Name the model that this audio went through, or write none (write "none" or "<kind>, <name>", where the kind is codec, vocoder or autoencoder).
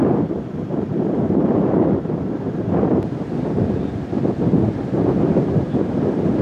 vocoder, BigVGAN v2